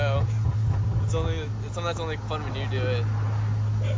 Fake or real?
real